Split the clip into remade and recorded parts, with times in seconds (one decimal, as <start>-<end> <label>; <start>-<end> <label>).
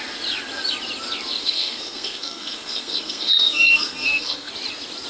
0.0-1.4 recorded; 1.4-4.5 remade; 4.5-5.1 recorded